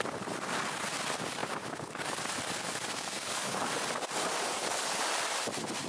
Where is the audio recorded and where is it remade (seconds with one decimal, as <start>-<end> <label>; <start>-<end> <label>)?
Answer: 0.0-1.4 recorded; 1.4-2.2 remade; 2.2-2.6 recorded; 2.6-3.7 remade; 3.7-5.9 recorded